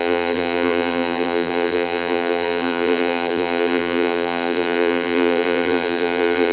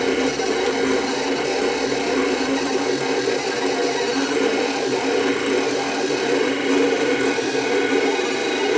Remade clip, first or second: first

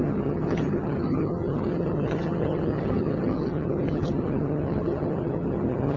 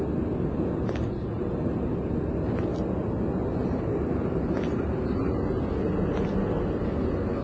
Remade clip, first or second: first